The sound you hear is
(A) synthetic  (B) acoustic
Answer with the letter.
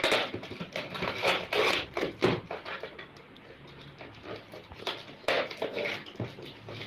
B